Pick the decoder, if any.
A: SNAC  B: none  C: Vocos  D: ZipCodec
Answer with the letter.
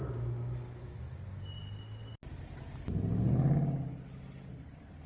B